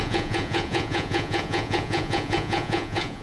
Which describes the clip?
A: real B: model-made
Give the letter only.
B